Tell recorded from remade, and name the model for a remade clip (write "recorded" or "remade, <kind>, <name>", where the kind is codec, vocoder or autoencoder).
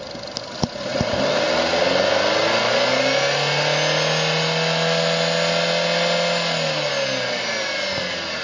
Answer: recorded